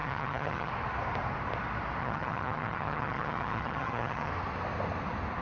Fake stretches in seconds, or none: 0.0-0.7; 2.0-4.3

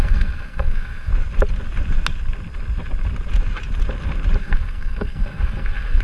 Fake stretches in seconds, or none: 0.0-1.1; 4.4-6.0